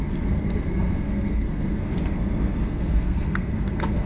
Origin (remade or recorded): remade